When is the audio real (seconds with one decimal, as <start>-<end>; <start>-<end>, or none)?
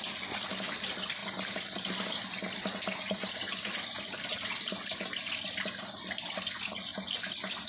0.0-7.7